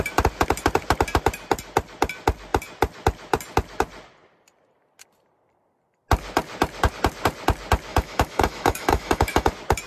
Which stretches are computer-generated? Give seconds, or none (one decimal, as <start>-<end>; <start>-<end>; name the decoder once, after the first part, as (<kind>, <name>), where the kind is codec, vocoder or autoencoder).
7.9-9.5 (autoencoder, DAC-VAE)